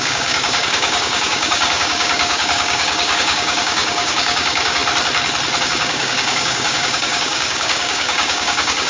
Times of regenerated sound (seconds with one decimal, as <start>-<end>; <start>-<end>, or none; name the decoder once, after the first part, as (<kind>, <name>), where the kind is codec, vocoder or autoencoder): 0.0-4.8 (codec, DAC); 5.6-8.9